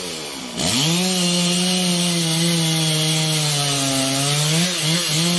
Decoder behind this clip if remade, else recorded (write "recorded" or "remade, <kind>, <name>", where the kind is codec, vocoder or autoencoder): recorded